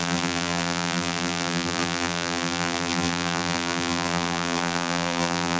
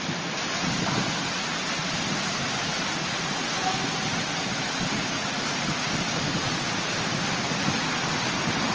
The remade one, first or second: first